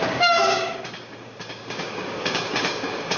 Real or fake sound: fake